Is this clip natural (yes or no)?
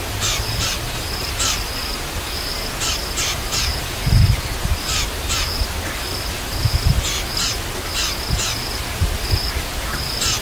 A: yes